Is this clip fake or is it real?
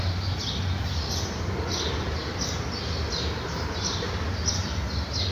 real